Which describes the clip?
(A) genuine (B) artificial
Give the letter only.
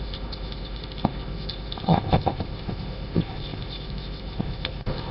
B